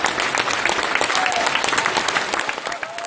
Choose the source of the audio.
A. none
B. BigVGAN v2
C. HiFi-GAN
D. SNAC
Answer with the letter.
A